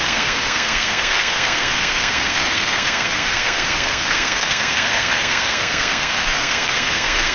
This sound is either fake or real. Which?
fake